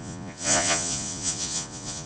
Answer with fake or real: fake